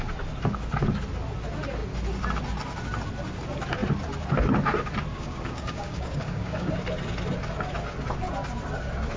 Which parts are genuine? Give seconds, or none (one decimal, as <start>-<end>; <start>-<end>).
0.0-5.1; 6.7-9.2